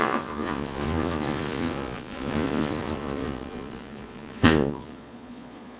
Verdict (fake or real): fake